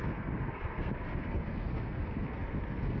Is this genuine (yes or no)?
no